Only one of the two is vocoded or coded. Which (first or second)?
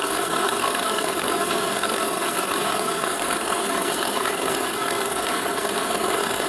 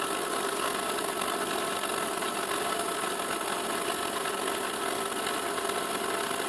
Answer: first